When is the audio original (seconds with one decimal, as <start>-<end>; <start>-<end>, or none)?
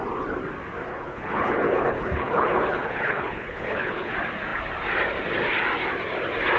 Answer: 0.0-0.9; 4.1-6.6